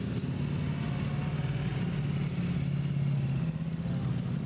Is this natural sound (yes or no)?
yes